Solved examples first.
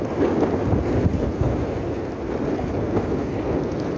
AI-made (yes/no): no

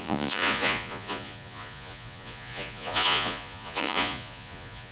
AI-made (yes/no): yes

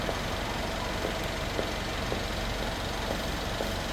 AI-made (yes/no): no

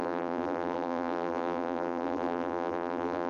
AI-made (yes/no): yes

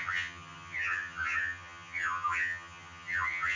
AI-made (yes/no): yes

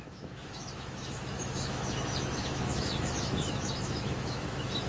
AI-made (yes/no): yes